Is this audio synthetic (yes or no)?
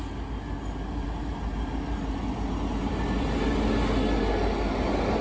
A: no